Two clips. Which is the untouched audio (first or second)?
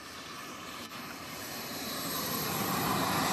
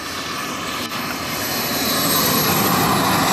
second